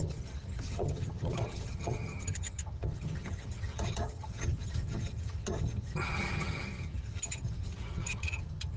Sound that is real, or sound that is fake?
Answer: fake